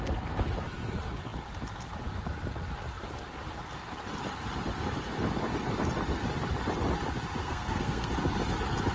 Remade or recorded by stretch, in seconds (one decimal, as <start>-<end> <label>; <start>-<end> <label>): 0.0-7.4 recorded; 7.4-8.1 remade; 8.1-8.9 recorded